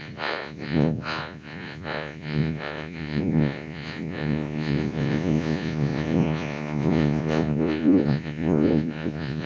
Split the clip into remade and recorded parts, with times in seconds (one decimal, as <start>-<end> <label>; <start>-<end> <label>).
0.0-9.5 remade